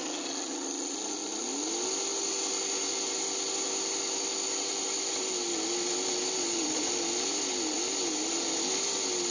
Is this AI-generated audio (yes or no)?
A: no